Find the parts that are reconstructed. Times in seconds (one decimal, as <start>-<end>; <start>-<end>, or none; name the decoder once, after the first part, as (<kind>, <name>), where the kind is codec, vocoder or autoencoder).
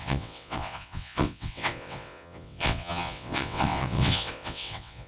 0.0-5.1 (vocoder, WaveNeXt)